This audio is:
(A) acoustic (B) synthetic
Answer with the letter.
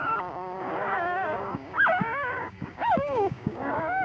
B